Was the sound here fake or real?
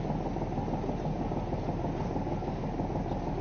real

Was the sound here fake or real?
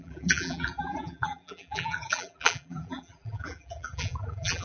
fake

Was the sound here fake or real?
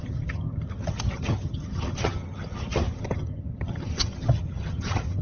fake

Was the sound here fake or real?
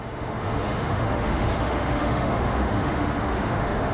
fake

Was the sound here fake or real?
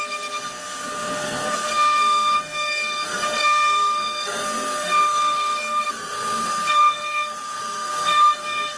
fake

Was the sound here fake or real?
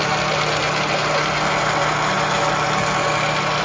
real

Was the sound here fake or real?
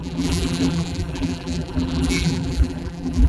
fake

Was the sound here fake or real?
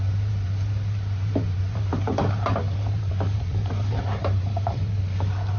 fake